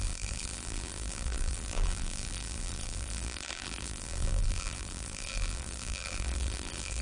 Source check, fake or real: fake